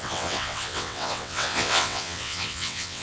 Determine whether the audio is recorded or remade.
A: remade